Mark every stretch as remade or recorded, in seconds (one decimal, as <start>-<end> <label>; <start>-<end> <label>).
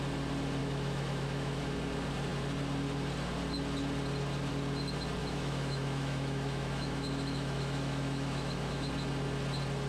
0.0-0.6 recorded; 0.6-1.6 remade; 1.6-5.2 recorded; 5.2-8.9 remade; 8.9-9.9 recorded